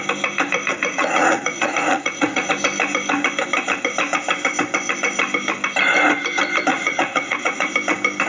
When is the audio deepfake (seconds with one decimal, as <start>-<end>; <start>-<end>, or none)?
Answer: 0.7-2.5; 6.7-7.7

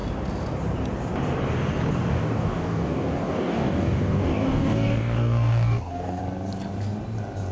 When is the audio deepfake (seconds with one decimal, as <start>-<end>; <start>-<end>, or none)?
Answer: 2.1-6.2

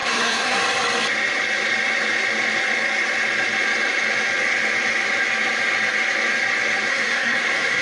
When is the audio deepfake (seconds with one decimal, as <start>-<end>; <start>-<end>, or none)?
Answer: 0.0-0.6; 6.9-7.8

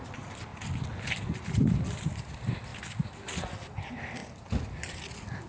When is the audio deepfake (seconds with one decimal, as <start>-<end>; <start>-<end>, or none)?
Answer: 0.0-0.5; 1.5-4.2; 4.7-5.5